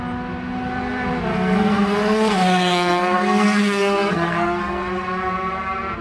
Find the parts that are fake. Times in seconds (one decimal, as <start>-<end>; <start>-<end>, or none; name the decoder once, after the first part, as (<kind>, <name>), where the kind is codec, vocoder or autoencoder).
1.3-4.9 (codec, SNAC)